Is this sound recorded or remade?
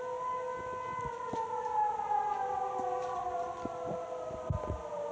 recorded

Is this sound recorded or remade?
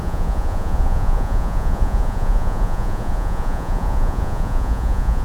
remade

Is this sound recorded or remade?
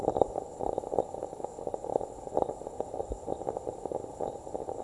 recorded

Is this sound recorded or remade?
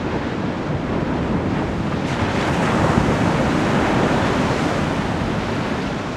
recorded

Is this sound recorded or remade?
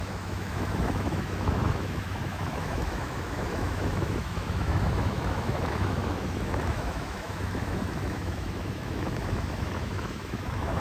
remade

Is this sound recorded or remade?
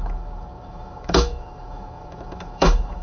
remade